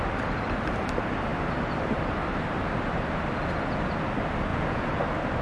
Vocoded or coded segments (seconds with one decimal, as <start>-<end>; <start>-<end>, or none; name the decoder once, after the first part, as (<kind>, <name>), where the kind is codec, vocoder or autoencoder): 4.5-5.0 (vocoder, Vocos)